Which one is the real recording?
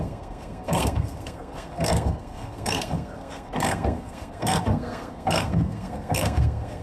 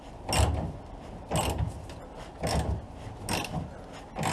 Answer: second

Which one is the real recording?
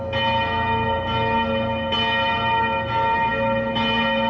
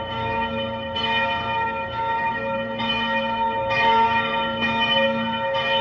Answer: first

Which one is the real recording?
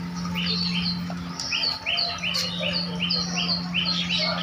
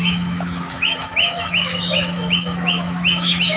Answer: first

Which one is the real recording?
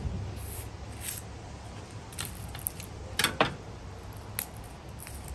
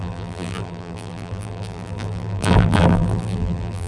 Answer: first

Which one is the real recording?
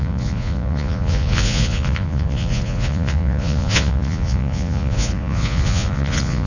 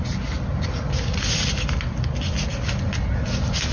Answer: second